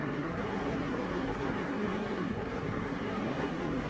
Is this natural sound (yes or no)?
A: no